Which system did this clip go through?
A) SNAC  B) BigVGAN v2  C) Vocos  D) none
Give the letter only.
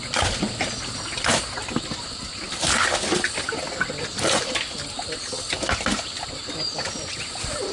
D